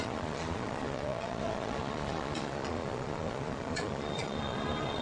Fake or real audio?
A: fake